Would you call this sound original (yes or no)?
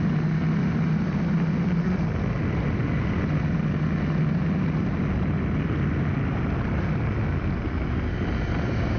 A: yes